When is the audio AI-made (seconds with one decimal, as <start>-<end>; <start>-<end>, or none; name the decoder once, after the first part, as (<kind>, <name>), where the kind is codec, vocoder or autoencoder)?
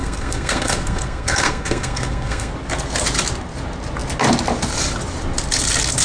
0.0-2.5 (codec, SNAC)